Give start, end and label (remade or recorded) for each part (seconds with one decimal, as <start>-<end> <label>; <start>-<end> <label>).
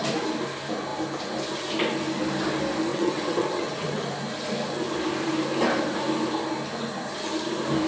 0.0-2.9 recorded; 2.9-4.0 remade; 4.0-7.9 recorded